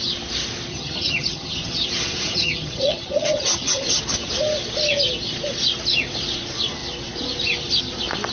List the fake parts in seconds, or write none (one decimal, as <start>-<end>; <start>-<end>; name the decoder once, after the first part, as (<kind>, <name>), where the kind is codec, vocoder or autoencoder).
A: 0.7-4.0 (vocoder, HiFi-GAN)